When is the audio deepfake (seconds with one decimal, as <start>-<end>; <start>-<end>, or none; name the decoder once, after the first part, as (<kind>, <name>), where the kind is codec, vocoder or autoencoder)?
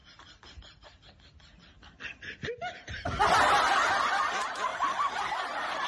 4.7-5.9 (vocoder, BigVGAN v2)